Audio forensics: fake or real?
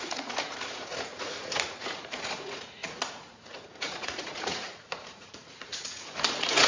fake